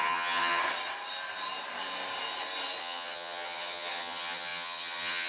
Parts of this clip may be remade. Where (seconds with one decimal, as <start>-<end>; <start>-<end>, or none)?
0.0-0.6; 2.8-5.3

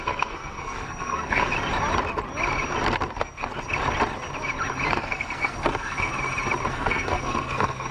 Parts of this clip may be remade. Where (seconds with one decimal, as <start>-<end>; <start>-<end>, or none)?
0.0-1.5; 3.1-3.5; 4.9-6.1; 6.7-7.9

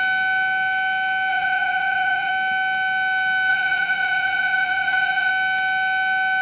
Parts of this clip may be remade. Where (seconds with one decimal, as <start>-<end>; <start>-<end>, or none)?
1.3-2.3; 3.5-5.3

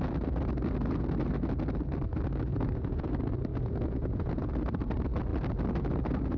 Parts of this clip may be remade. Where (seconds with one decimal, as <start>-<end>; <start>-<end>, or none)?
2.5-3.1; 3.5-4.5

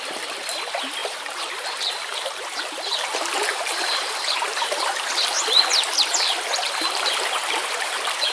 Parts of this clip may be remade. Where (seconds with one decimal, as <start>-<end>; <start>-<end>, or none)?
1.0-5.1; 7.4-7.9

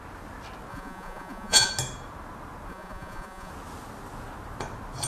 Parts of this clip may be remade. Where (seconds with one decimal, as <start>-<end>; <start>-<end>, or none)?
0.7-1.7; 2.7-3.5

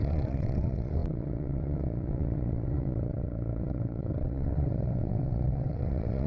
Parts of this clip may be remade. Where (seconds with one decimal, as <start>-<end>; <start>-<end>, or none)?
0.0-6.3